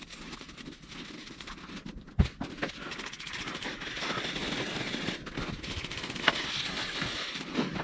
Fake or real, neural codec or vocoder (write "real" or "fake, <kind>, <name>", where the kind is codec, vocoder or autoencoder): real